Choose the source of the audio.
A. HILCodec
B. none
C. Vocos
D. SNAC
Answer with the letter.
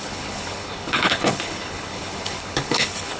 A